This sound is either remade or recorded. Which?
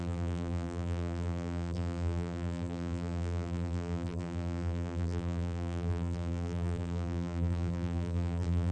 remade